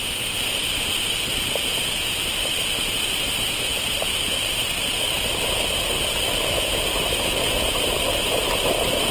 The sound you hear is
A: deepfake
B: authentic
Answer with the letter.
B